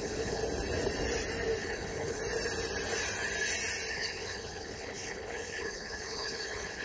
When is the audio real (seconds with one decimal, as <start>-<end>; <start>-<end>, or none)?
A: 0.4-1.6; 2.2-3.9